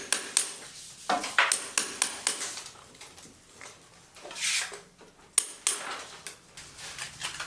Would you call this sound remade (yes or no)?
no